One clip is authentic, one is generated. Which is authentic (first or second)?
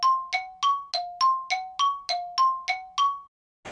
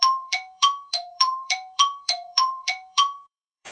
first